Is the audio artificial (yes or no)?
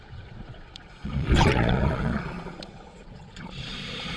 yes